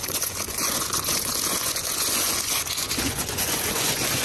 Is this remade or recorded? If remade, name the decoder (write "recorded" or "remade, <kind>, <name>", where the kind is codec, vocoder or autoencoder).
remade, vocoder, Vocos